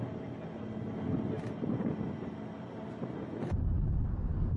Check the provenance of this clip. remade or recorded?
recorded